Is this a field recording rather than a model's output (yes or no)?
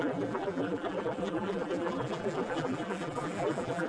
no